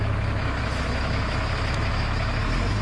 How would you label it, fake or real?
fake